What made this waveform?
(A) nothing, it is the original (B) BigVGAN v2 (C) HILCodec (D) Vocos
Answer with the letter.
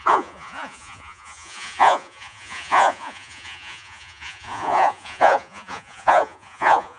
D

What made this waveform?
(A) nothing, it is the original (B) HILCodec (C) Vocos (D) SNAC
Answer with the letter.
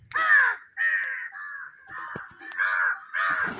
A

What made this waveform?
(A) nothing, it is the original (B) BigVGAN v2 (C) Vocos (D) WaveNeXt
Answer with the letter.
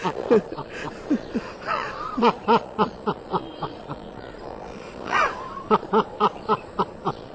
C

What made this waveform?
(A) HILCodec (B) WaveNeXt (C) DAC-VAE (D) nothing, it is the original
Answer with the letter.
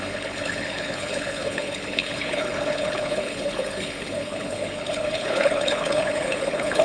A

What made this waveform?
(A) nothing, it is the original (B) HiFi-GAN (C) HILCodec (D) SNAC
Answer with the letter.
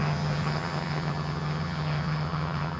B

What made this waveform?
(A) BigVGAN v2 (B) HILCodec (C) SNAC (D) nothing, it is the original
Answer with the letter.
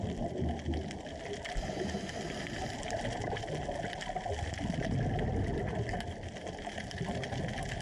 D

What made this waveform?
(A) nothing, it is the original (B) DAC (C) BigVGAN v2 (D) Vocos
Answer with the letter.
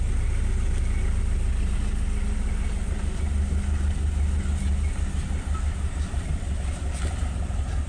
A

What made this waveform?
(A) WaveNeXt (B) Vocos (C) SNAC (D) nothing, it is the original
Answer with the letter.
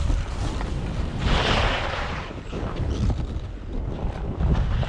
D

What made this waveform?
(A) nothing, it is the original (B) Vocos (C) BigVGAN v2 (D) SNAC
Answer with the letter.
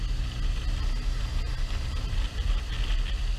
A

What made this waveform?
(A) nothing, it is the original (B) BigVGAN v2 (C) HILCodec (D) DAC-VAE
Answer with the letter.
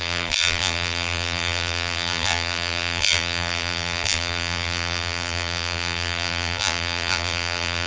B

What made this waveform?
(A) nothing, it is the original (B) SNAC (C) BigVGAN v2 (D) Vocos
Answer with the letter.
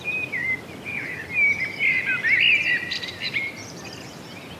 C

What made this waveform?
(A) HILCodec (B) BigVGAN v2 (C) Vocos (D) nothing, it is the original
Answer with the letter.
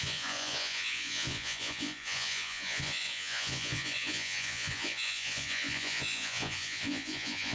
C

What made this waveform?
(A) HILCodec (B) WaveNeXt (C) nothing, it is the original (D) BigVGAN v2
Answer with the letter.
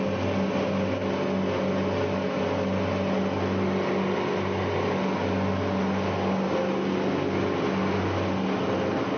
C